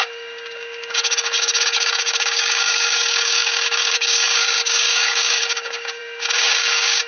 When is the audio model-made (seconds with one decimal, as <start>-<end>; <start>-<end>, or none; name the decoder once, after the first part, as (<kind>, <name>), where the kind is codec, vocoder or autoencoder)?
0.0-7.1 (codec, DAC)